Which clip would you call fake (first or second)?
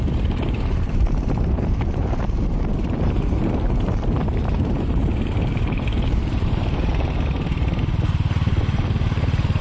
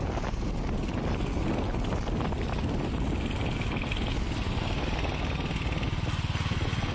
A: first